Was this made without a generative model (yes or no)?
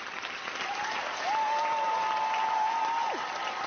yes